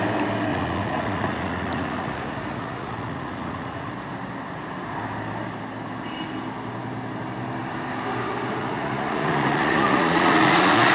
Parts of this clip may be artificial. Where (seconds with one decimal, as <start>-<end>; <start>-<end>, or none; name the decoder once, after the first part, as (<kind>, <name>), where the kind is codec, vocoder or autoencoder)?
0.5-3.9 (vocoder, Vocos); 8.6-10.9